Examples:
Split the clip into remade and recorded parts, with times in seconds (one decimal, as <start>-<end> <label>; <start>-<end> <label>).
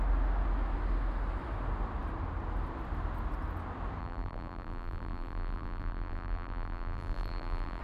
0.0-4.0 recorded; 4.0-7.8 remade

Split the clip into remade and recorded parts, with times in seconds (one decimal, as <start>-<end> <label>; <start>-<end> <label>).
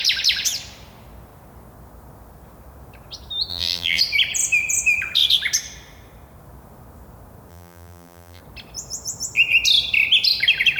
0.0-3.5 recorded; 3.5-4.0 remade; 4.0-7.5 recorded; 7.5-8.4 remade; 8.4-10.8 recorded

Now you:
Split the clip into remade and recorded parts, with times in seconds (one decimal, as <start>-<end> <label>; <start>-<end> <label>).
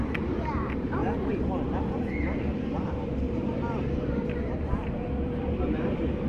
0.0-1.0 remade; 1.0-2.6 recorded; 2.6-6.3 remade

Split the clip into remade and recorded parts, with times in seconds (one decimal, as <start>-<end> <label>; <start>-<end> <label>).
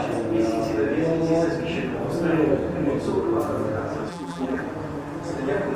0.0-4.1 recorded; 4.1-4.6 remade; 4.6-5.8 recorded